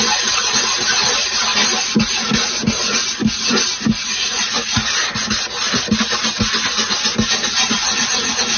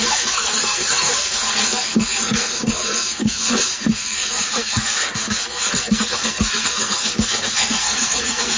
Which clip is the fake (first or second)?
second